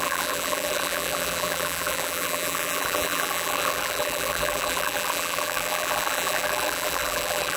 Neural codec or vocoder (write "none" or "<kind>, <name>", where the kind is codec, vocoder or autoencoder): vocoder, BigVGAN v2